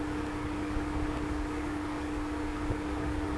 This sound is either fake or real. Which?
fake